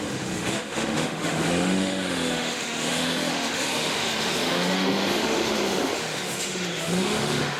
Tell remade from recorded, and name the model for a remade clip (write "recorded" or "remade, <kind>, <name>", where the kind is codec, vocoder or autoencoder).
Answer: remade, autoencoder, DAC-VAE